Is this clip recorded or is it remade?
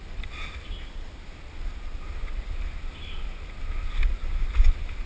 recorded